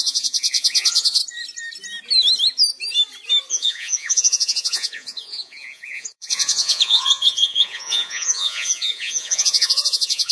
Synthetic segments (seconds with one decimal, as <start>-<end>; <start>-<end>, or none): 0.0-1.2; 3.5-10.3

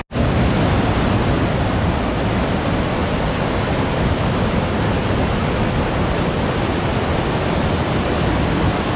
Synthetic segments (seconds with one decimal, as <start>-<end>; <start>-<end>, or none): none